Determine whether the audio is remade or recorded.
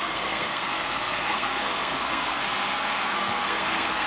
remade